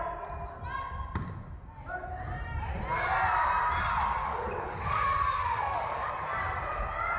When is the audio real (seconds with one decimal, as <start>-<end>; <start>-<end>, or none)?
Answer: 0.0-4.2; 6.1-7.2